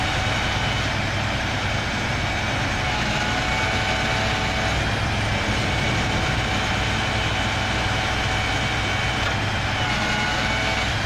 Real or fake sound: real